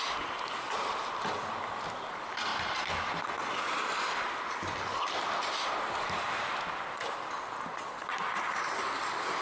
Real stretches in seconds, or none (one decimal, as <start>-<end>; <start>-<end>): 0.0-9.4